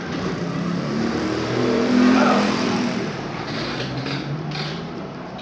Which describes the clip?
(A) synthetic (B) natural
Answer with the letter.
A